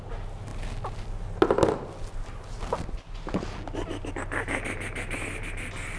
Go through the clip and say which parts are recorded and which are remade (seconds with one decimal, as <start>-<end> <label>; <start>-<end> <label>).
0.0-6.0 recorded